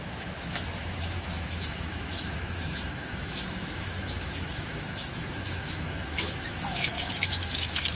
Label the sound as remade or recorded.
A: remade